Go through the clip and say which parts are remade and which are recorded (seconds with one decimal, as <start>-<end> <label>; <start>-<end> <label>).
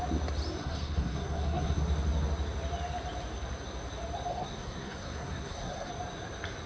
0.0-0.6 recorded; 0.6-1.8 remade; 1.8-4.3 recorded; 4.3-5.9 remade; 5.9-6.7 recorded